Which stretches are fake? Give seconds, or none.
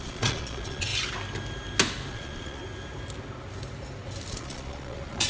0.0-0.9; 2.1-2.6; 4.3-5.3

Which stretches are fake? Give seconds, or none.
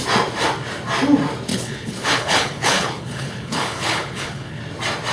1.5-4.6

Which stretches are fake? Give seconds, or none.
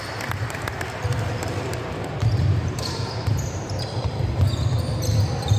1.0-4.4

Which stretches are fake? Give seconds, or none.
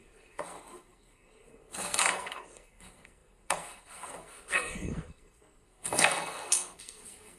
0.0-7.4